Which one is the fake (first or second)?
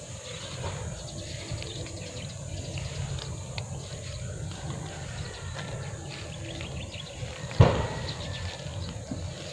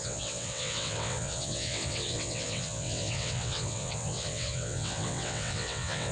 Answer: second